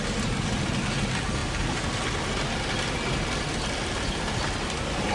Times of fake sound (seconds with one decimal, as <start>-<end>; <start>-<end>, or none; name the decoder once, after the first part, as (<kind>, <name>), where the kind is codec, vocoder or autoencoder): none